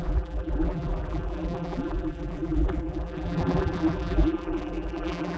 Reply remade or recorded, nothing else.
remade